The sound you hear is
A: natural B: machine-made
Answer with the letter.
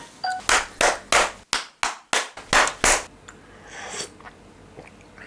A